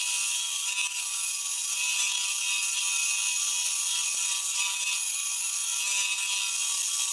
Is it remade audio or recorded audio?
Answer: recorded